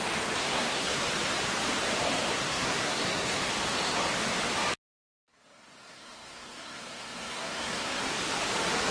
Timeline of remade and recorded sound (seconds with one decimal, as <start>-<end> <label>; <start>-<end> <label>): 0.0-0.4 recorded; 0.4-1.0 remade; 1.0-2.3 recorded; 2.3-3.5 remade; 3.5-5.3 recorded; 5.3-8.0 remade; 8.0-8.9 recorded